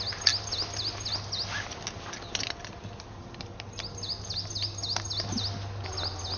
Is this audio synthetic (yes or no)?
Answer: no